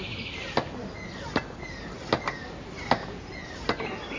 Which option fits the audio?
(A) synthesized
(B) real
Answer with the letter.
B